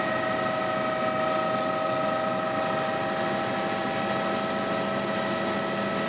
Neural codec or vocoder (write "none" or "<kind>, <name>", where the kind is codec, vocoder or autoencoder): none